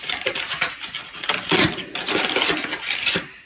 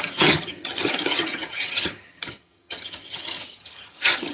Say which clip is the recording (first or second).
first